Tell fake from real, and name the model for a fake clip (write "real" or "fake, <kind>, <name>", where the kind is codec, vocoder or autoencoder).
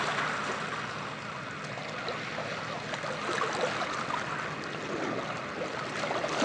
real